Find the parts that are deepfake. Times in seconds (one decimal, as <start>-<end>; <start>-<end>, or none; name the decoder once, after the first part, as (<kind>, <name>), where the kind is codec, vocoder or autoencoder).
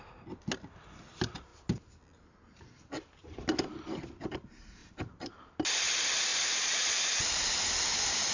3.2-4.0 (vocoder, BigVGAN v2); 4.8-5.3; 6.3-7.7